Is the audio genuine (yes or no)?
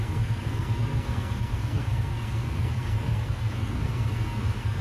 no